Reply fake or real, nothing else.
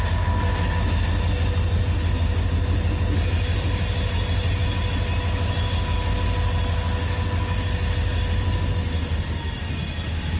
real